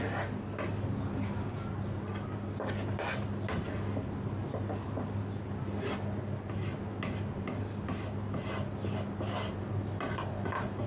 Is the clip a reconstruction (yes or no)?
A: no